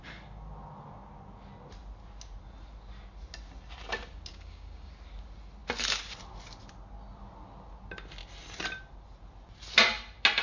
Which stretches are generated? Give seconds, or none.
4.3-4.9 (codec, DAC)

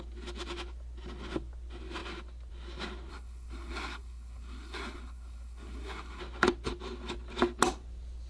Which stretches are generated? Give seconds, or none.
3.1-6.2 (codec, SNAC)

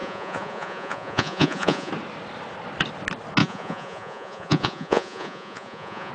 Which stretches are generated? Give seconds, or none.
0.0-1.9 (vocoder, Vocos); 3.4-6.1

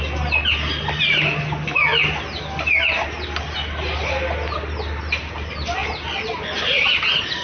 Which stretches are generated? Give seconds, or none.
none

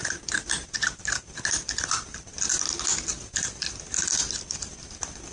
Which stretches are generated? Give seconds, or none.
none